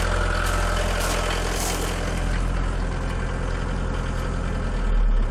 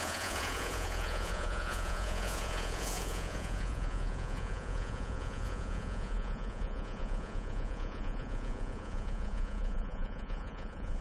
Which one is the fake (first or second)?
second